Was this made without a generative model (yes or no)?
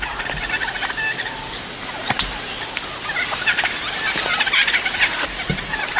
yes